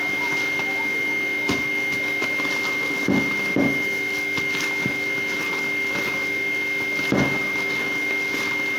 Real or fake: real